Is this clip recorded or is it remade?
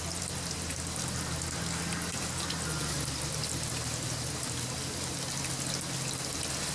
recorded